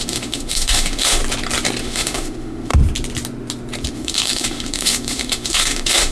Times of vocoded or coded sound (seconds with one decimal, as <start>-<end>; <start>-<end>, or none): 0.0-1.2; 1.8-2.7; 3.9-6.1